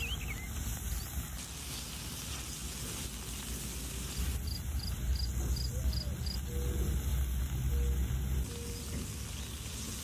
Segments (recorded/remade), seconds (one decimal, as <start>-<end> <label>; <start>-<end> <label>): 0.0-10.0 recorded